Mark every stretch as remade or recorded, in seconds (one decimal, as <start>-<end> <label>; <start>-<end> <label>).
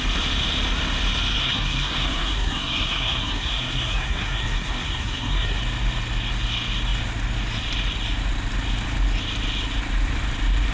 0.0-1.4 recorded; 1.4-5.6 remade; 5.6-10.7 recorded